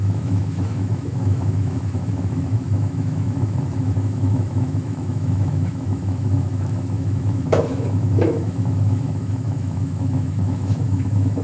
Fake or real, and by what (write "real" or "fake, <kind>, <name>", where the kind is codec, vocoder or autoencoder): fake, autoencoder, DAC-VAE